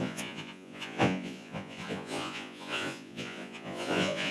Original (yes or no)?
no